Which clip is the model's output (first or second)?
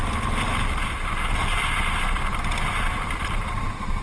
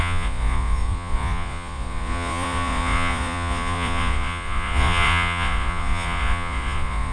second